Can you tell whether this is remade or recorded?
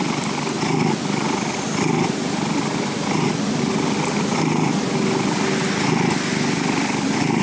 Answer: recorded